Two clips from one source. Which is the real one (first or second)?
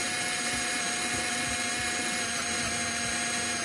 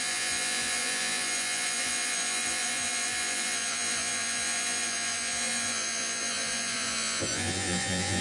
first